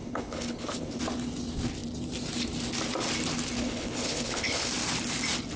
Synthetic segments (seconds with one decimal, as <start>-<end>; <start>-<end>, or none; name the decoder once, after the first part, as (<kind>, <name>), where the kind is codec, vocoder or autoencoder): 0.0-1.0 (codec, HILCodec); 3.6-4.7